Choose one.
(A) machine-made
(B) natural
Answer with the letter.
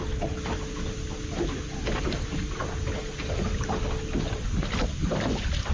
B